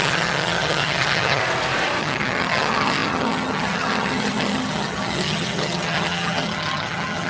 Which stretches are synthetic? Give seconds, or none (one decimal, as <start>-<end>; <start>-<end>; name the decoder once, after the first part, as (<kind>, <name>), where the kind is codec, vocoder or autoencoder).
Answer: 0.0-1.4 (vocoder, HiFi-GAN); 2.0-7.3